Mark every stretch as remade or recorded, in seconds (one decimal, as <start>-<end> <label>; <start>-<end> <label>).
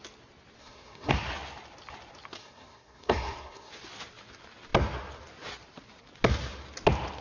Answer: 0.0-0.6 recorded; 0.6-1.1 remade; 1.1-2.4 recorded; 2.4-3.7 remade; 3.7-7.2 recorded